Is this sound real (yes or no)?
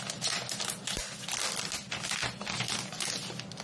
yes